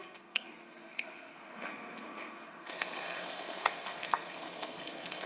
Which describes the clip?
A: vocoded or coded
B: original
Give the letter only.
A